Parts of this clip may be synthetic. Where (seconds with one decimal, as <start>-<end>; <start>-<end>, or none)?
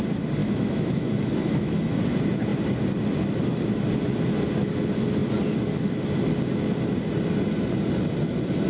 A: 0.4-1.9